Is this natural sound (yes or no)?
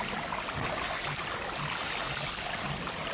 yes